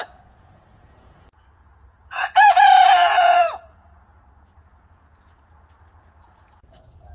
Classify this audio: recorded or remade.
remade